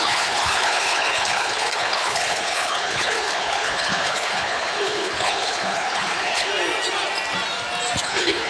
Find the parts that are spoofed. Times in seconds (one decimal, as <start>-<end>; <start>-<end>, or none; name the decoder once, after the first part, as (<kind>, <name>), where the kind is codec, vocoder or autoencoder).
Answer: 0.0-6.5 (codec, HILCodec); 8.0-8.5